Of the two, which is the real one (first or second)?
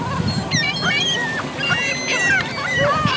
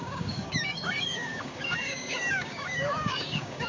first